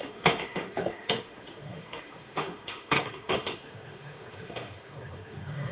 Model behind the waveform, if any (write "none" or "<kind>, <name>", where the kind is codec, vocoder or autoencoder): autoencoder, DAC-VAE